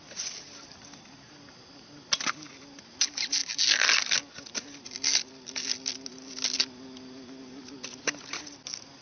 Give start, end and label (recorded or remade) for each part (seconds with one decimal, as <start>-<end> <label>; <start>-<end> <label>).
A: 0.0-9.0 recorded